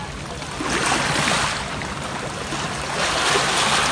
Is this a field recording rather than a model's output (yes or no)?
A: yes